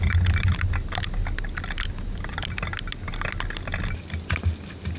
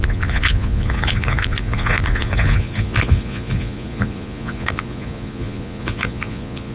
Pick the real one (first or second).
first